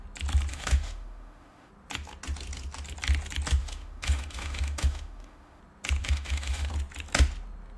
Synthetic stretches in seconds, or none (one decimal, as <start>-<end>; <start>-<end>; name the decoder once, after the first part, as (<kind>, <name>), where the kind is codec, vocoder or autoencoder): 0.5-1.7 (autoencoder, DAC-VAE); 3.6-5.6; 6.0-6.7